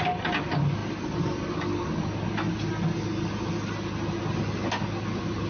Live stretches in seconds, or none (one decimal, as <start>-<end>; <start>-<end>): 0.0-5.5